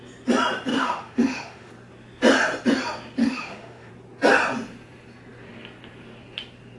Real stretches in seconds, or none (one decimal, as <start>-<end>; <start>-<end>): 0.0-0.7; 1.7-3.2; 3.9-6.8